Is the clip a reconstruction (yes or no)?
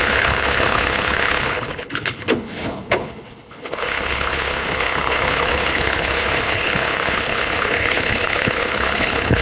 yes